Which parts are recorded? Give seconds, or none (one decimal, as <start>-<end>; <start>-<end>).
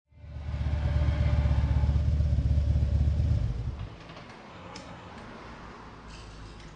0.0-4.5; 5.1-6.8